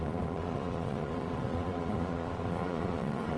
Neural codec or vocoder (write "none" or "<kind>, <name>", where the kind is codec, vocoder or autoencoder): vocoder, Vocos